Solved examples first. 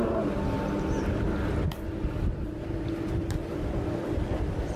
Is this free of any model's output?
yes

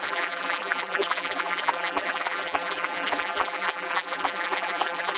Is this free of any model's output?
no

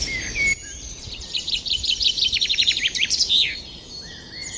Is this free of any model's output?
no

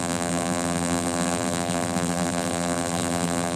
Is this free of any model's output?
no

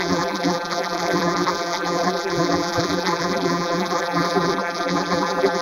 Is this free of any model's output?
no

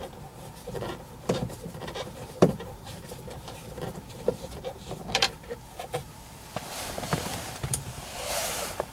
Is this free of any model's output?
no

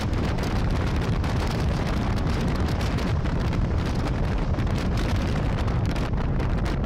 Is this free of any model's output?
no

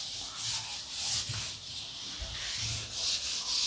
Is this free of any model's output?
yes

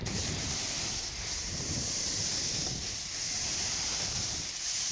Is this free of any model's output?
no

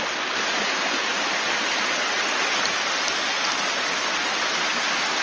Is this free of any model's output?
yes